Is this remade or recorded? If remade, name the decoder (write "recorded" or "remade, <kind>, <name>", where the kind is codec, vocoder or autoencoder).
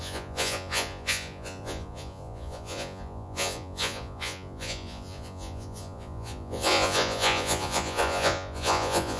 remade, vocoder, Vocos